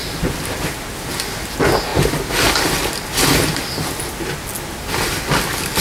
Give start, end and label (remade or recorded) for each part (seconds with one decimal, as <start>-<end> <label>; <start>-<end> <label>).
0.0-5.8 recorded